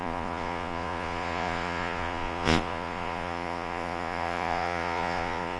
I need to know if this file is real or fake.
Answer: fake